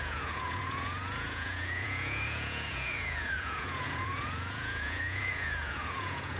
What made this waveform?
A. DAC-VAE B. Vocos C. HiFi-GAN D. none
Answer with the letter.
B